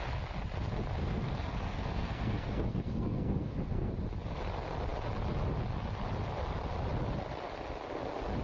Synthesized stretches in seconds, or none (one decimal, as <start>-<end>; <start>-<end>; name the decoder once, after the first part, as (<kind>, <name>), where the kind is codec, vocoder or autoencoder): 1.0-3.9 (codec, SNAC)